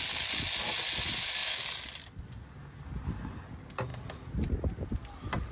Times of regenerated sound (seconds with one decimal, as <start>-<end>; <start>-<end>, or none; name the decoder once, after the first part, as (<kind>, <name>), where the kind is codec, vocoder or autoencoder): none